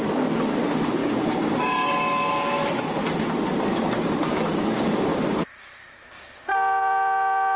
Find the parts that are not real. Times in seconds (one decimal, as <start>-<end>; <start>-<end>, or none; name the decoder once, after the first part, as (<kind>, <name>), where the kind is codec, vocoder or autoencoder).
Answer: 1.0-2.8 (codec, DAC); 4.3-5.3